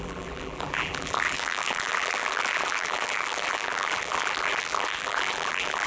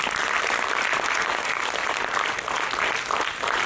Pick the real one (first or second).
second